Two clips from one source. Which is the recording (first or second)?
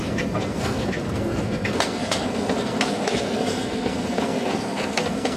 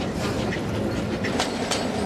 second